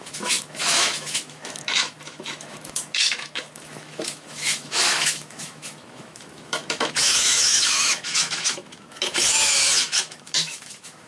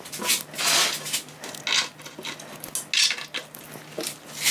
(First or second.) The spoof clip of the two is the first